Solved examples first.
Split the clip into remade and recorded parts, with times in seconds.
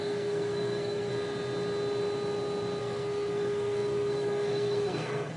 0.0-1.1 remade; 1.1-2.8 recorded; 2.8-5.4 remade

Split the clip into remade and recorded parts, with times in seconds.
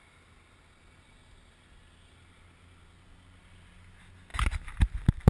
0.0-5.3 recorded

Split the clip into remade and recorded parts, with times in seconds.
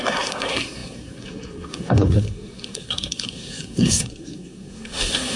0.0-5.4 remade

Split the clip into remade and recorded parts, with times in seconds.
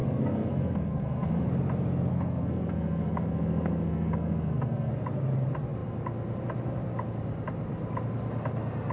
0.0-1.5 remade; 1.5-2.1 recorded; 2.1-4.9 remade; 4.9-8.9 recorded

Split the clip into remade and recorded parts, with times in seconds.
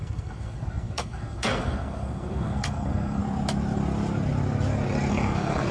0.0-3.2 remade; 3.2-5.1 recorded; 5.1-5.7 remade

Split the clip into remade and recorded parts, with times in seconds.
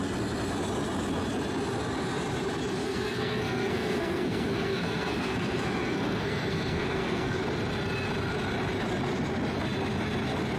0.0-2.8 recorded; 2.8-7.4 remade; 7.4-10.6 recorded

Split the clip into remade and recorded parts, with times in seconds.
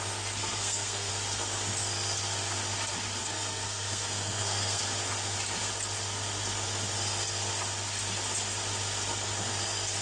0.0-0.4 recorded; 0.4-1.1 remade; 1.1-3.2 recorded; 3.2-4.8 remade; 4.8-10.0 recorded